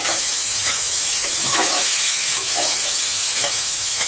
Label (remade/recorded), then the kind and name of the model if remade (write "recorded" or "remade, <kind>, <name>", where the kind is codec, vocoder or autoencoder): remade, autoencoder, DAC-VAE